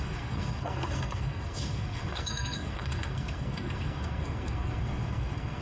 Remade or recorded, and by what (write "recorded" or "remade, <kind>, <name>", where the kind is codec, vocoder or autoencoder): remade, codec, SNAC